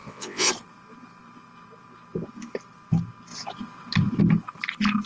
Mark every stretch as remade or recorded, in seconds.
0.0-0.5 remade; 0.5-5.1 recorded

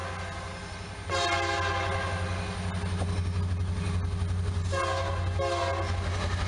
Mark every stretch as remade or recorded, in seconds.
0.0-6.5 recorded

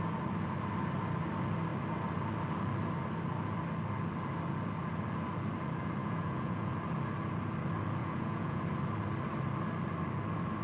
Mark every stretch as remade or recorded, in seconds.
0.0-6.0 recorded; 6.0-6.7 remade; 6.7-8.0 recorded; 8.0-8.6 remade; 8.6-10.6 recorded